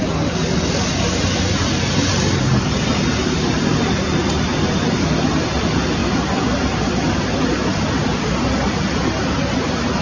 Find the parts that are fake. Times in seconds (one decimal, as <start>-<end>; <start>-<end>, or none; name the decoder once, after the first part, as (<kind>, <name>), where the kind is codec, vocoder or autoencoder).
none